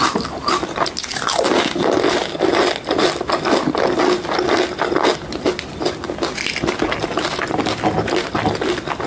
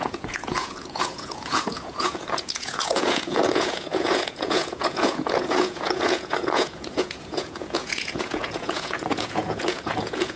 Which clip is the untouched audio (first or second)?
first